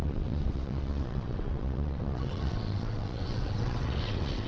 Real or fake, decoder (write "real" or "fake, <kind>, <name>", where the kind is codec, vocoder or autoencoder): fake, vocoder, WaveNeXt